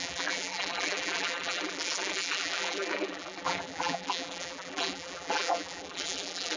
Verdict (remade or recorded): remade